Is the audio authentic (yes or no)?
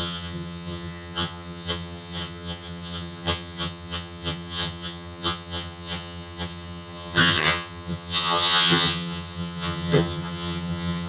no